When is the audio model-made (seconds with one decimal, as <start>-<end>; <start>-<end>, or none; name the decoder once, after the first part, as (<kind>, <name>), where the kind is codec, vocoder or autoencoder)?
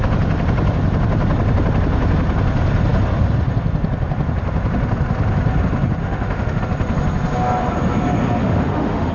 6.0-6.6 (autoencoder, DAC-VAE); 8.4-9.1